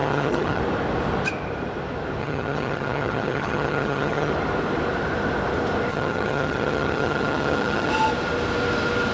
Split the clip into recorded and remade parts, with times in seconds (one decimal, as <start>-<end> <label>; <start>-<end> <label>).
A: 0.0-0.6 remade; 0.6-2.2 recorded; 2.2-4.3 remade; 4.3-5.9 recorded; 5.9-7.9 remade; 7.9-9.1 recorded